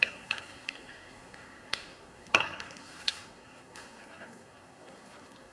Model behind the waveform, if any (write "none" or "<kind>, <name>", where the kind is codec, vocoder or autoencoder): codec, SNAC